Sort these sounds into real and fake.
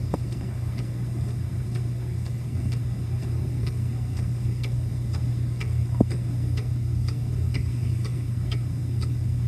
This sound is fake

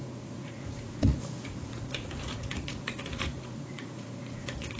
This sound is fake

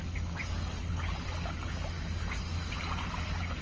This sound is real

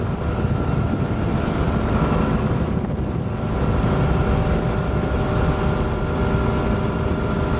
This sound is real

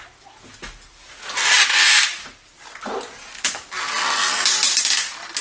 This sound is real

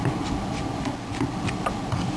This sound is real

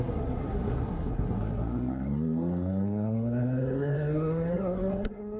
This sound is fake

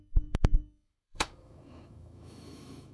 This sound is fake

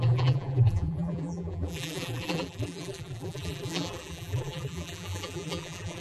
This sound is fake